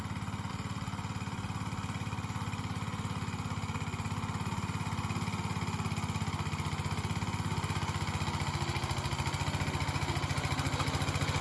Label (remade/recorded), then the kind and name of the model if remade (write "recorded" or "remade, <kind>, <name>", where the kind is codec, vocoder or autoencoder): recorded